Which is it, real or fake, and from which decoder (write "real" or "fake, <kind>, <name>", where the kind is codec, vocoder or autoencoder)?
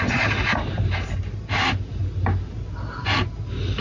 real